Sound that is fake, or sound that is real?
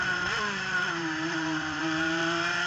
fake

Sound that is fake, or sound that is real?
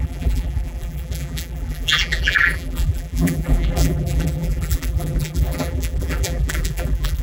fake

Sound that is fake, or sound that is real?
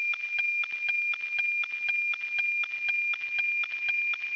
real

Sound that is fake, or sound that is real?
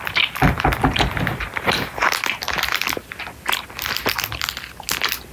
real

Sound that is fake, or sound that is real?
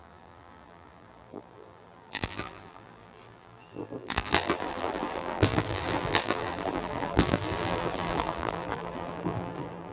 fake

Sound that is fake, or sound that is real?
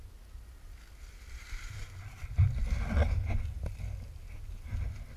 real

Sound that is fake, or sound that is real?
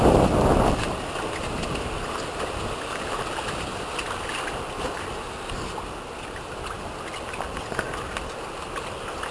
real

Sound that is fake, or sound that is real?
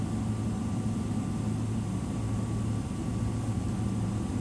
real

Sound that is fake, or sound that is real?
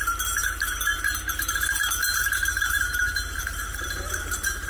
fake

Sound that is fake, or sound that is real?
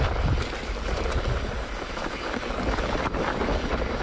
real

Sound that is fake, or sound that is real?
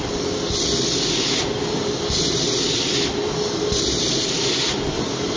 real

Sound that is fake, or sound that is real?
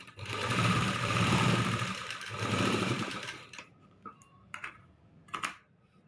fake